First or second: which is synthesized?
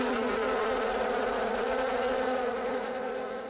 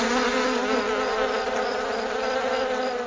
first